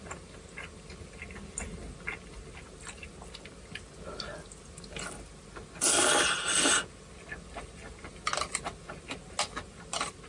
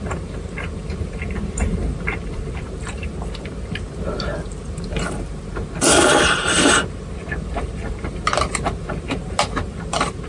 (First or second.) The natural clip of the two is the first